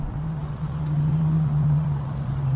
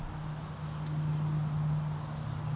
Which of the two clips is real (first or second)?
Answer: second